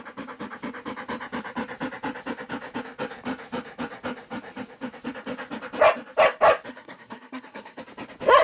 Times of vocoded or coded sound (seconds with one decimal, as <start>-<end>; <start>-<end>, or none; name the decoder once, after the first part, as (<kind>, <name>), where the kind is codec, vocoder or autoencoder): 6.7-7.8 (codec, SNAC)